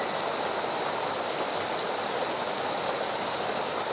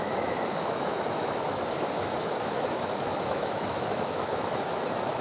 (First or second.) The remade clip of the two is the second